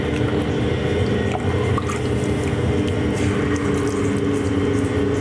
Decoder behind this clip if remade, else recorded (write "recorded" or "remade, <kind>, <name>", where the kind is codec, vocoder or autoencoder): recorded